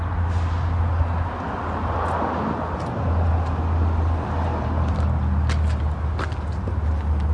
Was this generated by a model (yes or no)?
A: no